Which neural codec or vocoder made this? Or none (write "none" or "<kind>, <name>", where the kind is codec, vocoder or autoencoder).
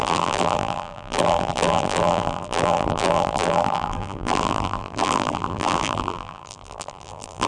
vocoder, BigVGAN v2